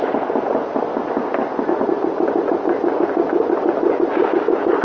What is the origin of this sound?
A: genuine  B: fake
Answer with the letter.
A